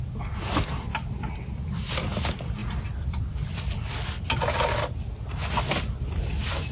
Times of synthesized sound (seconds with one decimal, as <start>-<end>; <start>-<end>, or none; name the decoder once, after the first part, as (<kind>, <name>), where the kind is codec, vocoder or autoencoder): none